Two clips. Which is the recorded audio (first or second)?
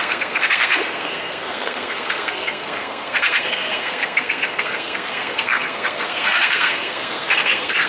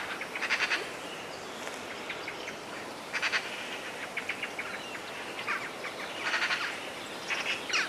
second